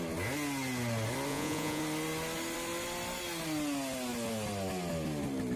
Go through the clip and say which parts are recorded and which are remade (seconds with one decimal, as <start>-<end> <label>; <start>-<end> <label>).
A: 0.0-1.3 recorded; 1.3-1.8 remade; 1.8-5.6 recorded